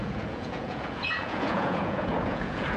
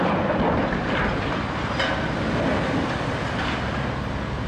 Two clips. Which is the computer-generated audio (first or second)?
first